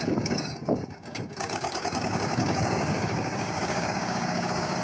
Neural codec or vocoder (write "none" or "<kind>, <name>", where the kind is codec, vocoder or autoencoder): codec, DAC